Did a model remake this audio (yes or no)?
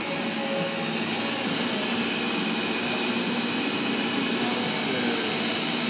no